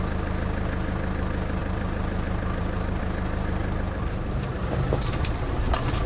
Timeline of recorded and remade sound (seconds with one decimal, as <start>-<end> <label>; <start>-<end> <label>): 0.0-1.6 recorded; 1.6-3.0 remade; 3.0-3.6 recorded; 3.6-5.6 remade; 5.6-6.1 recorded